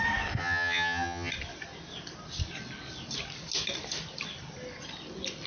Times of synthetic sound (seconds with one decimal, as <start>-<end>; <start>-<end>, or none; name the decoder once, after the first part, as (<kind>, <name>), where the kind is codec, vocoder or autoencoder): 0.4-1.3 (vocoder, HiFi-GAN)

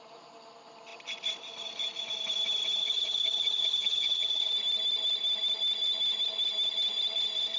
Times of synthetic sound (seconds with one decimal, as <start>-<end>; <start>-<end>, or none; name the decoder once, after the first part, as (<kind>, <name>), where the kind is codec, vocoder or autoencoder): 2.8-4.5 (vocoder, HiFi-GAN)

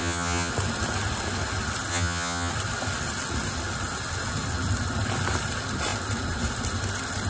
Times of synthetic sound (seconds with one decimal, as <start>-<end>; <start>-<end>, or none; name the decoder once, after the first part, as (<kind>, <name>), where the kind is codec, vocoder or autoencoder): 0.0-0.5 (vocoder, HiFi-GAN); 1.9-2.5

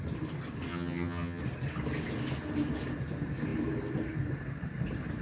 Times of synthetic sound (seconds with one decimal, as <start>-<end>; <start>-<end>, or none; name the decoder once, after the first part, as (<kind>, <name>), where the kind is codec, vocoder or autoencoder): 0.7-1.4 (vocoder, HiFi-GAN)

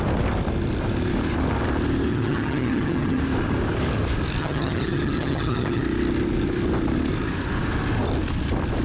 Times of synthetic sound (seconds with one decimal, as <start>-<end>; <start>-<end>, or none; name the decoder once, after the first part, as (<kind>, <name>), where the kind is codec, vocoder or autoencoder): 2.1-3.2 (vocoder, HiFi-GAN); 4.4-5.8

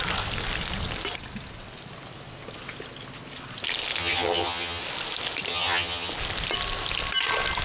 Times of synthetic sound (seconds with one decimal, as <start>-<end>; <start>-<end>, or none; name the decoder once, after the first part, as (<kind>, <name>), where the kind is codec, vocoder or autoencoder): 4.0-4.8 (vocoder, HiFi-GAN); 5.5-6.1

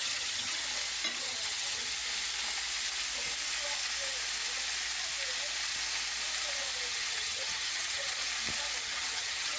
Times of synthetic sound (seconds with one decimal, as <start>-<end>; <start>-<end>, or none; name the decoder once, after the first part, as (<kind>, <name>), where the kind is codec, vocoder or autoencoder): 0.0-0.6 (vocoder, HiFi-GAN); 1.2-2.0; 6.9-8.2; 8.8-9.6

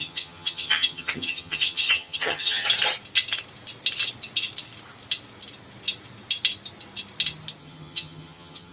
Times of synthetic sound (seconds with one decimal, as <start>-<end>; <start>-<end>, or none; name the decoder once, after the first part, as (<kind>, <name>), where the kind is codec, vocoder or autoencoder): 0.0-2.6 (vocoder, HiFi-GAN); 7.6-8.7